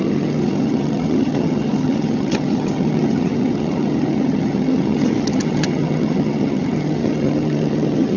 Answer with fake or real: fake